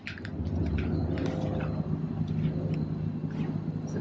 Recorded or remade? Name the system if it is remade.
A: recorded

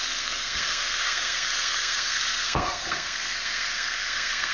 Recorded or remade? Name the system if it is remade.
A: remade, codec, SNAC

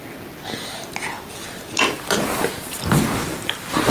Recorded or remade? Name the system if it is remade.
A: recorded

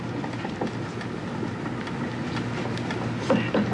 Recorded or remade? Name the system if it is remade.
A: recorded